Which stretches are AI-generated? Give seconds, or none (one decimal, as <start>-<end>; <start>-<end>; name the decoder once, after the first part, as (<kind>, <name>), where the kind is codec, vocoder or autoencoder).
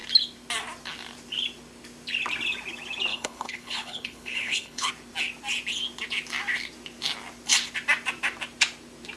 3.1-4.9 (codec, HILCodec)